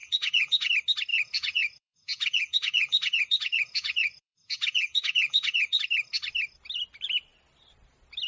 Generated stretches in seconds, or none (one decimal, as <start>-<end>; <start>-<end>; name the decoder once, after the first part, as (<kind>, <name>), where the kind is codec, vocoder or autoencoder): 0.0-0.7 (vocoder, Vocos); 1.1-5.8